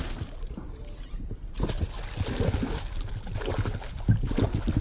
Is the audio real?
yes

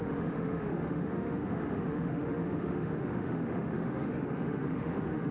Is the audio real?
no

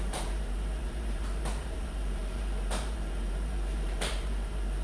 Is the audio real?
no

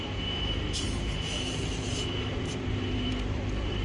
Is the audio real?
no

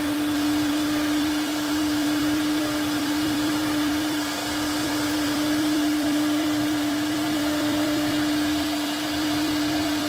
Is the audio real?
no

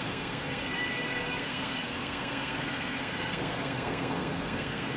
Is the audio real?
no